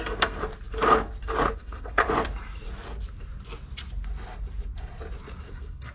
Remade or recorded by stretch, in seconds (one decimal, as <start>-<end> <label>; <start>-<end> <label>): 0.0-0.4 remade; 0.4-1.5 recorded; 1.5-2.0 remade; 2.0-5.5 recorded; 5.5-5.9 remade